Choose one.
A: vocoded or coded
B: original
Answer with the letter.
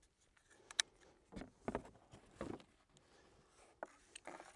B